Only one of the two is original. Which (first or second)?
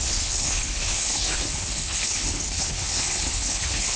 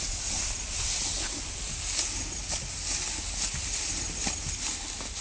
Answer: second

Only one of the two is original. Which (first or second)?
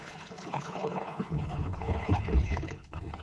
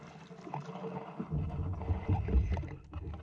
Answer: second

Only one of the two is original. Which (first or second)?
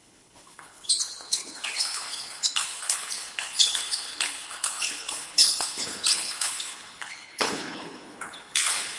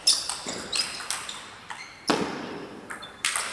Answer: second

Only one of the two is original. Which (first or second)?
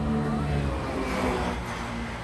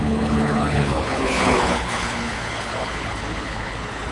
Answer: first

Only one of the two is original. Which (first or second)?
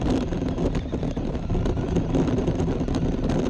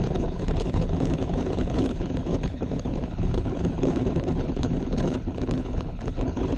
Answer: first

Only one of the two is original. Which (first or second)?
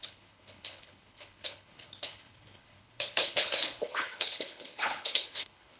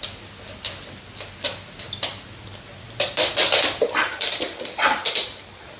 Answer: second